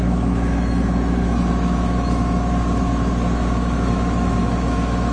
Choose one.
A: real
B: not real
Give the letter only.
B